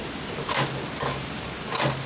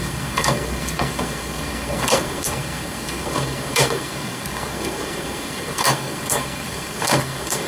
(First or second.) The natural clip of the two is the first